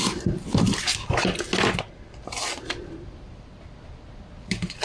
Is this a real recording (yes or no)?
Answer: yes